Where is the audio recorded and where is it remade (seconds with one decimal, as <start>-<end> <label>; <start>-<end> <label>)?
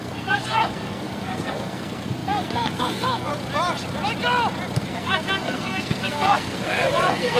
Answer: 0.0-3.3 remade; 3.3-4.8 recorded; 4.8-7.4 remade